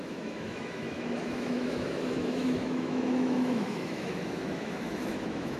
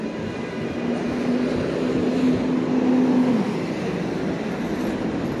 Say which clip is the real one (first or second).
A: second